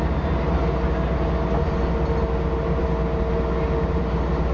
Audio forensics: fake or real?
real